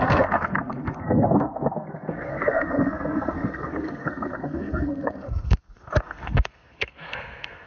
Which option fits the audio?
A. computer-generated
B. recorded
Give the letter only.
A